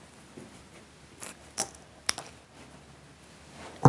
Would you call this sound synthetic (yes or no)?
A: no